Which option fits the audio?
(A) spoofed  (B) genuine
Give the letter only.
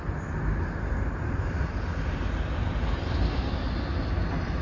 B